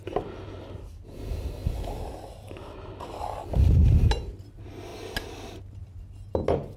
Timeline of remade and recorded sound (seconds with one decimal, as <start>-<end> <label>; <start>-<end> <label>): 0.0-6.8 recorded

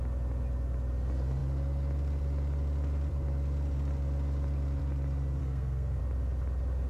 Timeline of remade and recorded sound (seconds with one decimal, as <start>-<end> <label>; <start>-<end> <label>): 0.0-5.4 recorded; 5.4-6.0 remade; 6.0-6.9 recorded

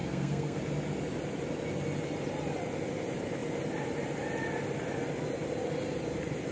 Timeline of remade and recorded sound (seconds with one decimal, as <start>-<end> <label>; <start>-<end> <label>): 0.0-0.6 remade; 0.6-6.5 recorded

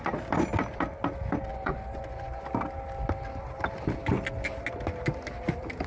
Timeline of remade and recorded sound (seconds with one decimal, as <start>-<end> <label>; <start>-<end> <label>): 0.0-1.5 recorded; 1.5-2.5 remade; 2.5-5.9 recorded

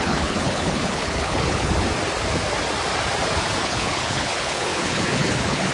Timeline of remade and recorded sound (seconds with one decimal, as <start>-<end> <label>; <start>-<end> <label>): 0.0-1.7 remade; 1.7-3.6 recorded; 3.6-5.7 remade